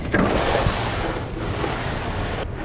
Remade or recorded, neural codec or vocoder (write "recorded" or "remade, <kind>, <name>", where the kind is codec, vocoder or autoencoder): recorded